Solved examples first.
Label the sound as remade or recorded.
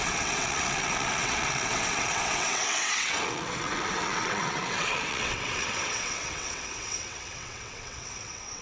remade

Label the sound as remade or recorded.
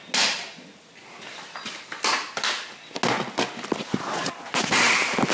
recorded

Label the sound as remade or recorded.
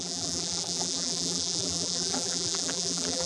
remade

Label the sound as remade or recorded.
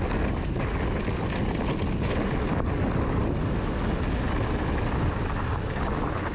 recorded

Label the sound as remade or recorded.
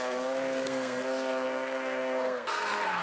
remade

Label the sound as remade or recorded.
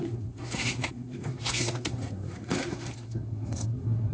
remade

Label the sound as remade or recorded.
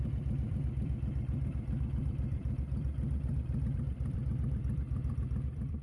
remade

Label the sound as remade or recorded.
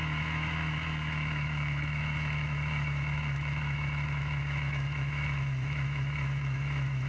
remade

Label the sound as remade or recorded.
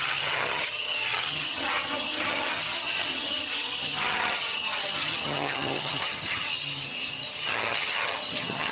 remade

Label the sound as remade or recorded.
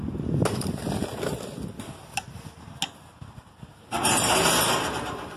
recorded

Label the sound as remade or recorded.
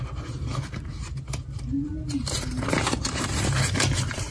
remade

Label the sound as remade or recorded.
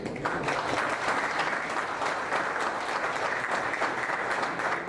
recorded